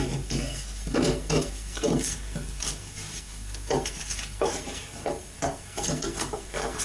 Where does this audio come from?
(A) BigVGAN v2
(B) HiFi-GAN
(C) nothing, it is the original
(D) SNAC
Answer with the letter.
D